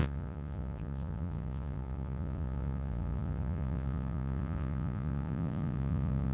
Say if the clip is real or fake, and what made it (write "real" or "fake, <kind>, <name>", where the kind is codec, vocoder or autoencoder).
fake, vocoder, Vocos